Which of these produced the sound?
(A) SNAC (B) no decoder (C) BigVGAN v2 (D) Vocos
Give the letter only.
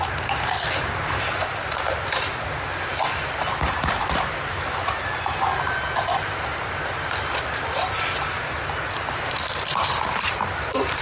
B